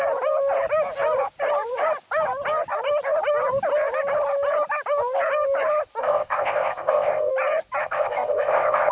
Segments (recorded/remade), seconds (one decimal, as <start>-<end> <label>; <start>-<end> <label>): 0.0-6.0 recorded; 6.0-7.3 remade; 7.3-7.8 recorded; 7.8-8.9 remade